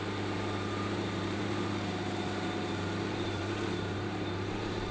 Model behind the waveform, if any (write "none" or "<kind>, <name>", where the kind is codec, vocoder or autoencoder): vocoder, BigVGAN v2